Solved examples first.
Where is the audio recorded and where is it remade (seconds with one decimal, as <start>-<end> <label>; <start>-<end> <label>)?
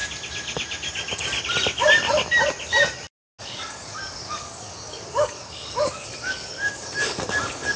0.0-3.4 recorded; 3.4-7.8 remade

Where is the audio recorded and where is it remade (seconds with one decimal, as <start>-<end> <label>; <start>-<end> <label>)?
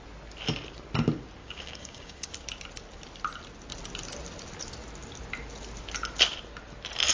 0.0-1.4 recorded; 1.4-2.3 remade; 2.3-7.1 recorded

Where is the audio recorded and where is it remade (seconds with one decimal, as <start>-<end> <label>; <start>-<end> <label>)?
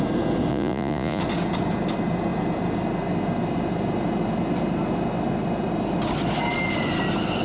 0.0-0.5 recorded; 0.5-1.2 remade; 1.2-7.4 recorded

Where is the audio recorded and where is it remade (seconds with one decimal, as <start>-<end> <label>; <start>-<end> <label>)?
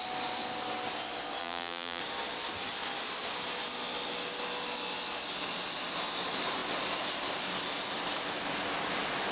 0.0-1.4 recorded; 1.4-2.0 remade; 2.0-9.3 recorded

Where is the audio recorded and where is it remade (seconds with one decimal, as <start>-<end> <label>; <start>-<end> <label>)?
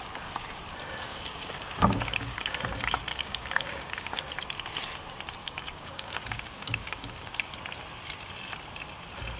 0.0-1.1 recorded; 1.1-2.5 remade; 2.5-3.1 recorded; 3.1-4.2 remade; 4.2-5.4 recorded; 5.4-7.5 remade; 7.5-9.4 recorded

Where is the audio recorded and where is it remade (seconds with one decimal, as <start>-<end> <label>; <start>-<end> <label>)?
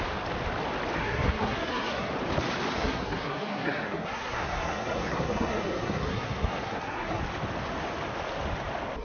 0.0-1.0 recorded; 1.0-2.1 remade; 2.1-2.7 recorded; 2.7-7.2 remade; 7.2-9.0 recorded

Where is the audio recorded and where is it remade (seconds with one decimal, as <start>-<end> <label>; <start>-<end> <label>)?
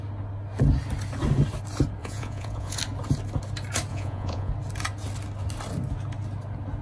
0.0-2.0 recorded; 2.0-2.8 remade; 2.8-3.9 recorded; 3.9-4.5 remade; 4.5-6.8 recorded